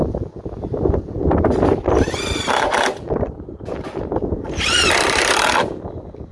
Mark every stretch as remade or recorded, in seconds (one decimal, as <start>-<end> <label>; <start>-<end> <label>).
0.0-6.3 remade